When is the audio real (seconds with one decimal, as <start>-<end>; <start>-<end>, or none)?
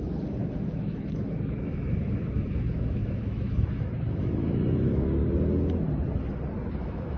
5.2-6.7